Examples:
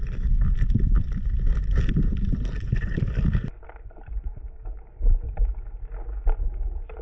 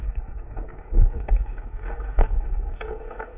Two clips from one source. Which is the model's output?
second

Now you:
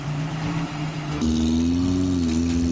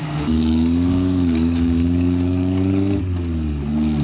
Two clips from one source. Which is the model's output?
second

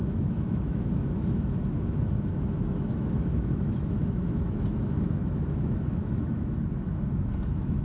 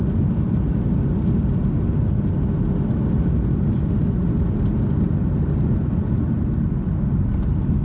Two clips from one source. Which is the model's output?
first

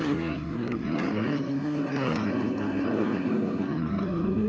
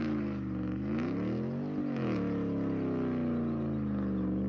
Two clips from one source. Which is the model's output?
first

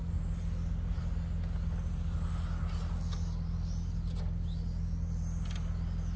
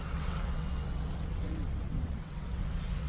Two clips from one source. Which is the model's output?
second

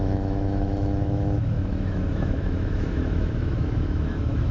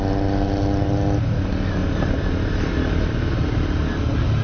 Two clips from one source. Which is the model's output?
first